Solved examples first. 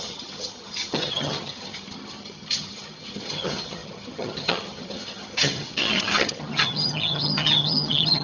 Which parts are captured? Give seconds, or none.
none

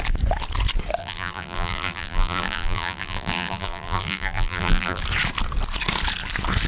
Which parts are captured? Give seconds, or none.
0.0-1.0; 5.0-6.7